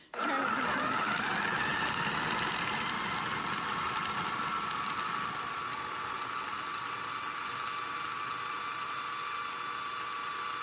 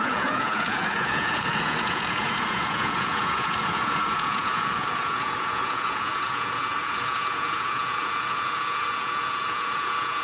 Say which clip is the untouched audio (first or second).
first